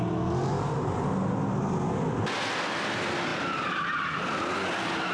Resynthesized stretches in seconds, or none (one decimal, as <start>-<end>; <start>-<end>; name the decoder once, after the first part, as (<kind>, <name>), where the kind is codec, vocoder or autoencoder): none